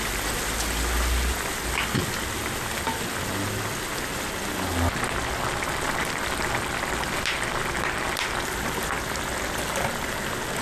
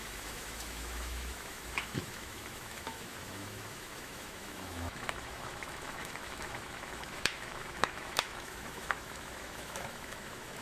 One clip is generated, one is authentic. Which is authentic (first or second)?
first